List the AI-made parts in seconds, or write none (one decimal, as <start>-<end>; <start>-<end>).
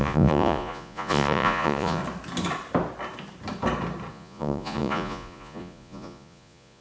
0.0-2.0; 4.1-6.8